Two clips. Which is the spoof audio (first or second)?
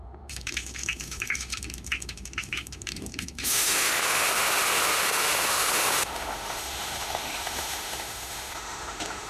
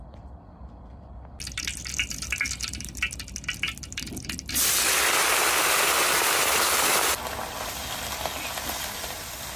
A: first